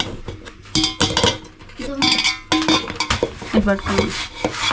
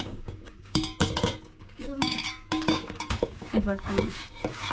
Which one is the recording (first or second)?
first